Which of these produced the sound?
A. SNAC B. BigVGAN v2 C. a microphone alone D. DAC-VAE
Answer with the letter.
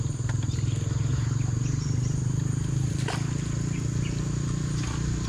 C